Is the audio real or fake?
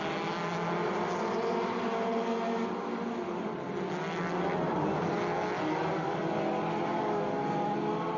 real